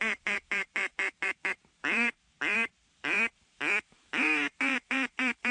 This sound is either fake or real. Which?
fake